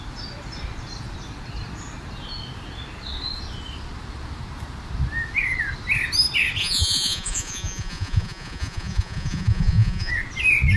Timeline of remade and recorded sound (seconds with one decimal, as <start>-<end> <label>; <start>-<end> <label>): 0.0-6.6 recorded; 6.6-10.1 remade; 10.1-10.8 recorded